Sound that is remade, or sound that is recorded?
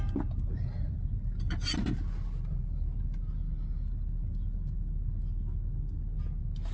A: recorded